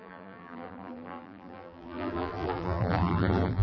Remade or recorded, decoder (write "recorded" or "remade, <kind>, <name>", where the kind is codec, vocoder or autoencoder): remade, vocoder, BigVGAN v2